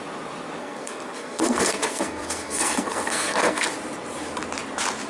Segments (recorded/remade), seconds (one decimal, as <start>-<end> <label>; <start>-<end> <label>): 0.0-0.6 recorded; 0.6-3.7 remade; 3.7-5.1 recorded